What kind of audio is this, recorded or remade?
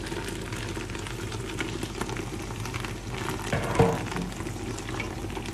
recorded